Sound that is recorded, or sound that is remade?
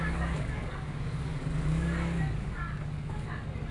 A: remade